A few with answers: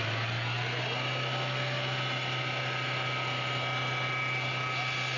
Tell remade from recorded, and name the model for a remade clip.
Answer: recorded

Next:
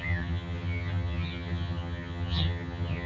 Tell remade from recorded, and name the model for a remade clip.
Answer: remade, vocoder, HiFi-GAN